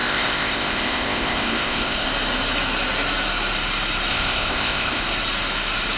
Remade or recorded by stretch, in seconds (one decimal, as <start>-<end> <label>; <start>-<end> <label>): 0.0-2.1 remade; 2.1-4.1 recorded; 4.1-5.0 remade; 5.0-6.0 recorded